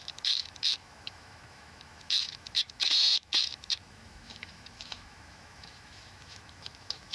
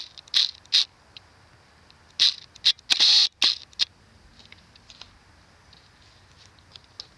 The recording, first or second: second